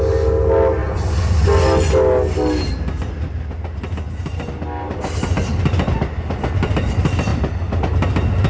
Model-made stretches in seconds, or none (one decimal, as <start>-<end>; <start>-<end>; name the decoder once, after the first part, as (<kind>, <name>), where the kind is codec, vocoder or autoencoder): none